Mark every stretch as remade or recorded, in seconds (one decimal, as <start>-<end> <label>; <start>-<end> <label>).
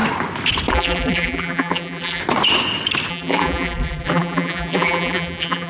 0.0-0.7 recorded; 0.7-2.2 remade; 2.2-3.1 recorded; 3.1-5.7 remade